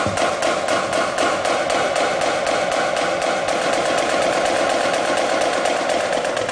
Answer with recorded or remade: recorded